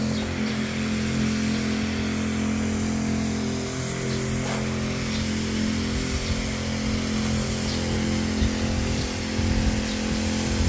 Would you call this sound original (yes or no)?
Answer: yes